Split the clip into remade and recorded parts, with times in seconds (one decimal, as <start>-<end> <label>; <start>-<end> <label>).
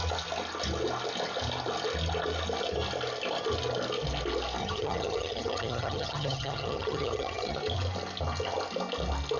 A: 0.0-4.6 recorded; 4.6-7.6 remade; 7.6-9.4 recorded